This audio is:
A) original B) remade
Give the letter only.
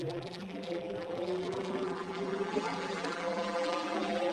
B